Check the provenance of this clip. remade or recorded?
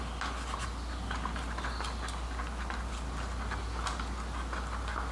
recorded